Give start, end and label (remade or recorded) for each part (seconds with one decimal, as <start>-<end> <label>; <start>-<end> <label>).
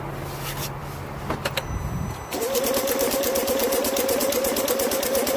0.0-5.4 recorded